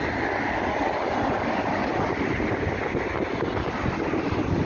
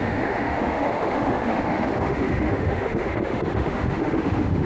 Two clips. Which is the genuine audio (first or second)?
first